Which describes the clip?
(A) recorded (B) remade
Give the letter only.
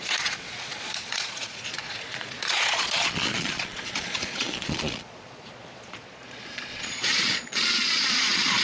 B